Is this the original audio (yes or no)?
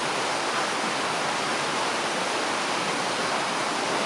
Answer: yes